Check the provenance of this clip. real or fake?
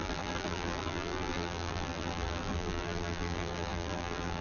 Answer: fake